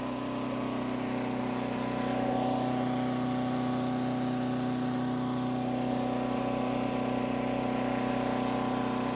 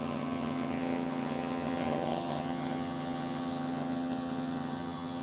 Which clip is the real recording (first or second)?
first